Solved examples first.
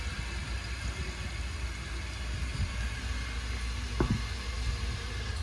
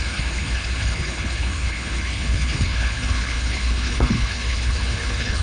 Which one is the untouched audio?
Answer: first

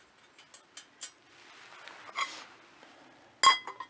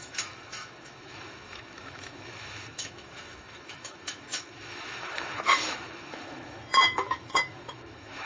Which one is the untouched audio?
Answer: first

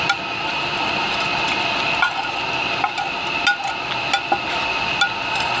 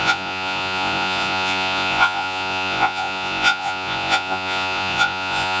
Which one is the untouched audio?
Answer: first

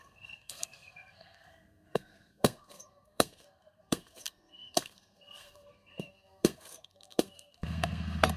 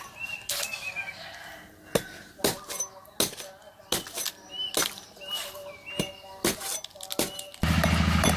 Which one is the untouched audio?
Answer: second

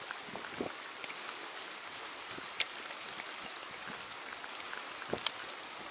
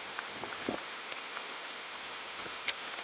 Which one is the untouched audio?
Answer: first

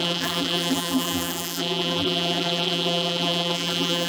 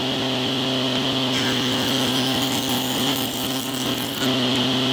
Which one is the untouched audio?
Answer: second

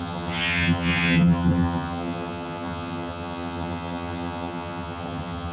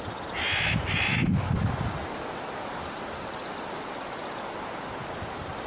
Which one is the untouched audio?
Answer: second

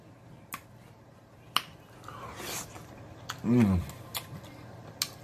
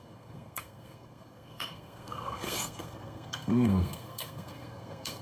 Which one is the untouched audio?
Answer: first